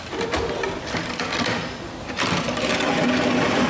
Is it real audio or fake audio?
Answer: real